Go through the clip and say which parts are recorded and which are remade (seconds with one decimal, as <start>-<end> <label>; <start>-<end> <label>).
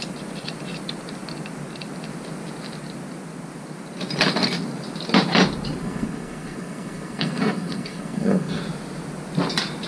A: 0.0-5.8 recorded; 5.8-8.6 remade; 8.6-9.9 recorded